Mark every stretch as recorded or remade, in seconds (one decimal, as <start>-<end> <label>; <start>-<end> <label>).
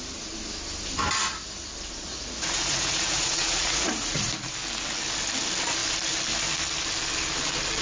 0.0-2.1 recorded; 2.1-4.3 remade; 4.3-7.8 recorded